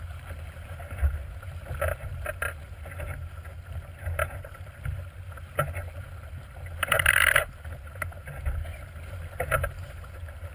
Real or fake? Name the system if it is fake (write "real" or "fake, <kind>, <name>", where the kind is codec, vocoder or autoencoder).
real